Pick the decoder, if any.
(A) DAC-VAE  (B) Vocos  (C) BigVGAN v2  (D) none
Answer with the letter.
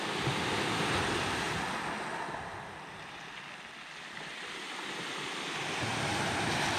D